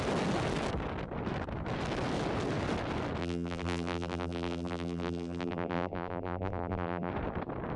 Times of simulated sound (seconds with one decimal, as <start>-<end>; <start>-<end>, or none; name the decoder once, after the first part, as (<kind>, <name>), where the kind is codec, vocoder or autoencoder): 3.2-7.1 (vocoder, BigVGAN v2)